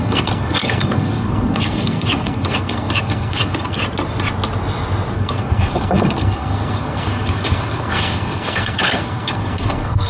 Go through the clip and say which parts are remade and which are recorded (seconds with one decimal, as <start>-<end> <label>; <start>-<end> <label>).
0.0-3.8 remade; 3.8-5.1 recorded; 5.1-10.1 remade